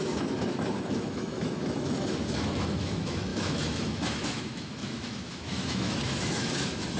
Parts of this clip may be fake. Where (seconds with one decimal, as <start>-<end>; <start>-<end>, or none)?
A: 0.0-7.0